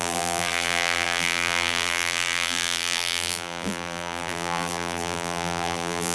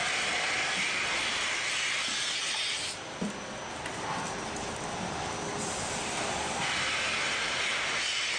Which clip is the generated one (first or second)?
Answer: first